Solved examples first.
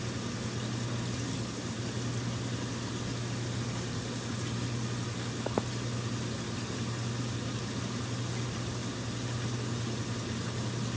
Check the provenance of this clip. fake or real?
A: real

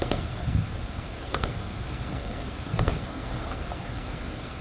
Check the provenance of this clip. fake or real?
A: fake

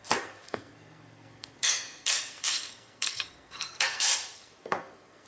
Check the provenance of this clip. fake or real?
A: fake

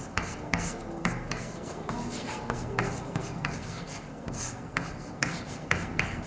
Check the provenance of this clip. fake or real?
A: fake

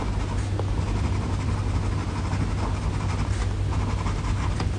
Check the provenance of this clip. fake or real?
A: real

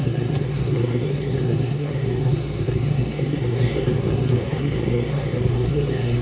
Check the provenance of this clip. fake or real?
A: fake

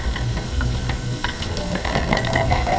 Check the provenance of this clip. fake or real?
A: fake